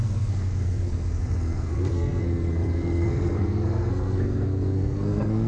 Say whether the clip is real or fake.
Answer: fake